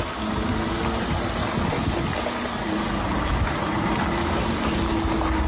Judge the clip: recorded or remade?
recorded